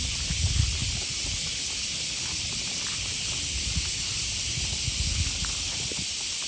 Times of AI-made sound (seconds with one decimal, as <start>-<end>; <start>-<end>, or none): none